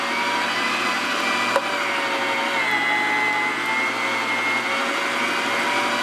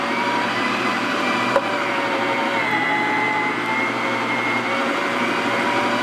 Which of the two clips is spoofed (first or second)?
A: second